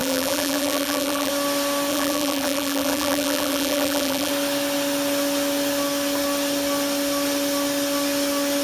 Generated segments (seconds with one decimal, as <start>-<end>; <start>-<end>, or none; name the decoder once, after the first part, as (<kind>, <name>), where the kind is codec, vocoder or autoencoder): 0.0-1.3 (vocoder, BigVGAN v2); 1.9-4.3